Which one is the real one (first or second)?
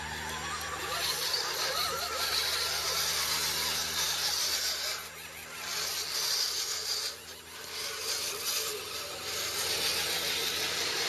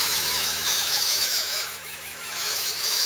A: first